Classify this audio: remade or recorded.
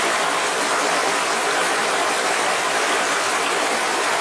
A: remade